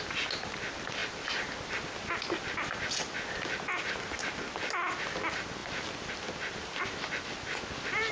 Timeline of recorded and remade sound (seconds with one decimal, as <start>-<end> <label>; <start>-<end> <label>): 0.0-8.1 recorded